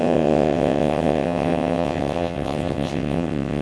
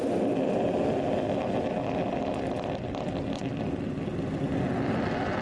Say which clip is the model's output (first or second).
first